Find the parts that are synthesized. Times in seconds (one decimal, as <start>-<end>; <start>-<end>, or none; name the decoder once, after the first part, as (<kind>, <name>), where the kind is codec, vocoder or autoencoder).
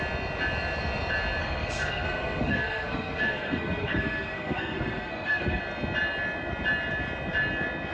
1.4-5.6 (codec, SNAC)